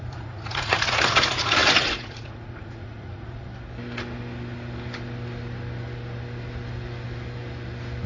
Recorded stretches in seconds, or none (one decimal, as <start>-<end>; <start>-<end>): 3.5-8.1